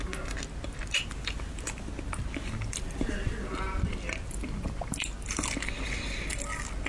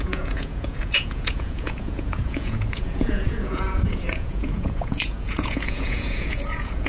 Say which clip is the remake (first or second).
second